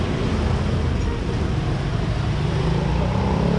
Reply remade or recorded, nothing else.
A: recorded